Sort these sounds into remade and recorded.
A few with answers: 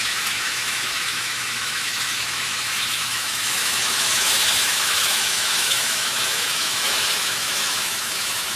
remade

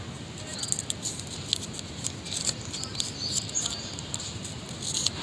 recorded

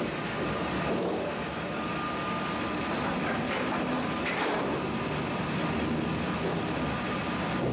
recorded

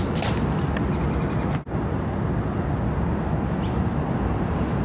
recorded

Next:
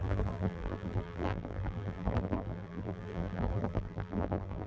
remade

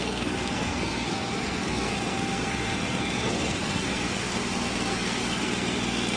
remade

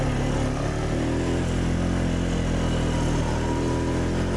recorded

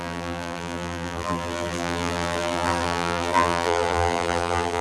remade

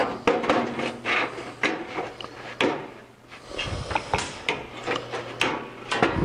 recorded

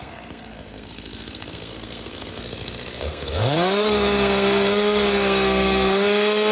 remade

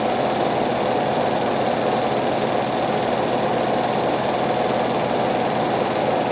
recorded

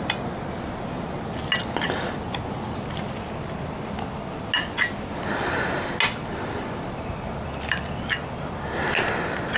recorded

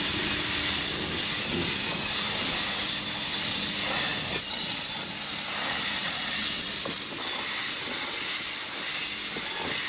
remade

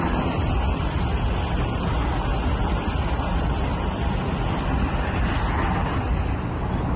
recorded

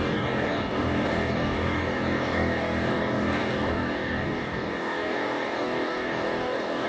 remade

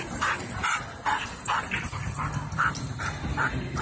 recorded